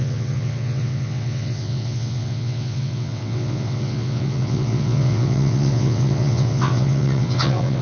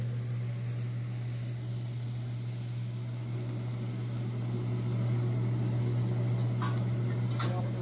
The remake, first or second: first